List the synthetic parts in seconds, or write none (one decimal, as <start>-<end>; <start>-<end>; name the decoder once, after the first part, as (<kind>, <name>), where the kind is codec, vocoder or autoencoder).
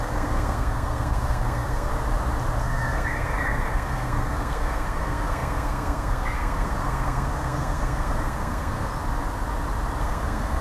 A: 0.0-1.9 (codec, SNAC); 2.6-8.9; 10.0-10.6